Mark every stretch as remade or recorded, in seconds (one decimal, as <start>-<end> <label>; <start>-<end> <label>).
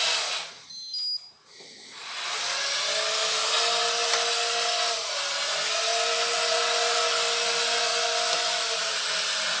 0.0-9.6 recorded